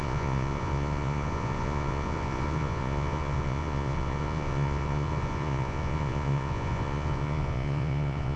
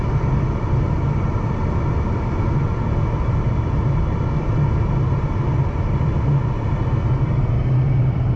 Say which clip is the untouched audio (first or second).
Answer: second